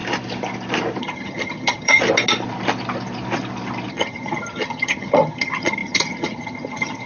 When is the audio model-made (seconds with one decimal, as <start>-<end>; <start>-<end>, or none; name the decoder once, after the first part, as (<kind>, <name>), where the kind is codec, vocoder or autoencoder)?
1.0-2.0 (vocoder, HiFi-GAN); 3.9-7.1